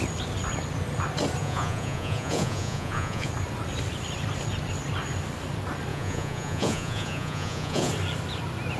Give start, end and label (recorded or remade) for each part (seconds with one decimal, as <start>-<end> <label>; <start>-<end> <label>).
0.0-1.4 recorded; 1.4-3.3 remade; 3.3-5.9 recorded; 5.9-7.9 remade; 7.9-8.8 recorded